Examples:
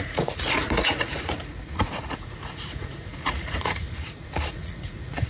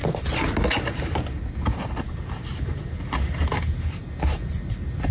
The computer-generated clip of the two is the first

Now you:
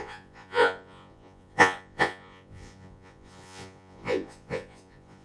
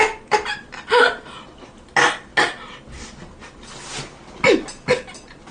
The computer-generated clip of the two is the first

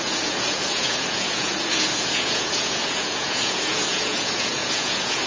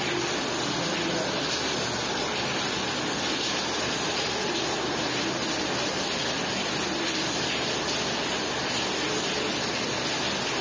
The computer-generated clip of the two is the first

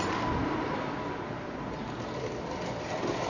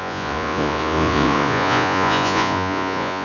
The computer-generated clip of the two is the second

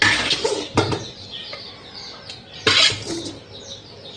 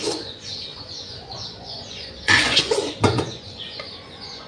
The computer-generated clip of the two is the second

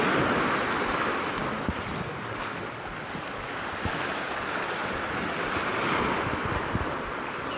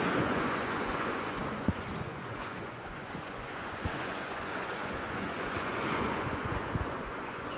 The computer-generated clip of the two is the second